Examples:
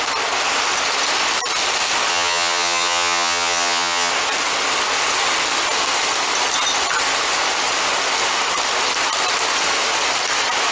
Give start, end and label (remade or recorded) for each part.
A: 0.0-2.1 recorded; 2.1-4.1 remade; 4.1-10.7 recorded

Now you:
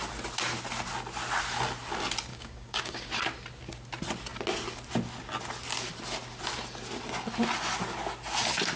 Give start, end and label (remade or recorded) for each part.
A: 0.0-2.3 recorded; 2.3-3.1 remade; 3.1-8.8 recorded

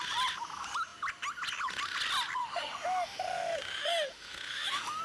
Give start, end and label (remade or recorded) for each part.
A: 0.0-2.4 recorded; 2.4-5.0 remade

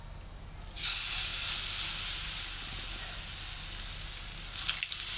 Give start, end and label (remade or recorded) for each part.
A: 0.0-5.2 recorded

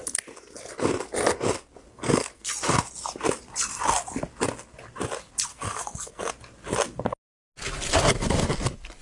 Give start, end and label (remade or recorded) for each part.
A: 0.0-1.9 recorded; 1.9-2.5 remade; 2.5-5.5 recorded; 5.5-6.3 remade; 6.3-9.0 recorded

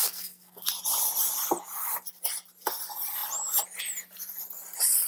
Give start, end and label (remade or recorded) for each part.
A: 0.0-0.7 remade; 0.7-5.1 recorded

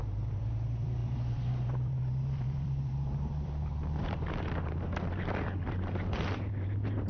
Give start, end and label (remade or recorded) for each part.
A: 0.0-7.1 remade